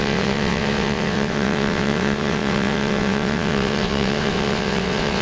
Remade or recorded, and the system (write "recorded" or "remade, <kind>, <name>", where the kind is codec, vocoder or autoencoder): remade, vocoder, WaveNeXt